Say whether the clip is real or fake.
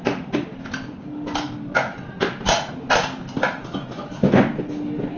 real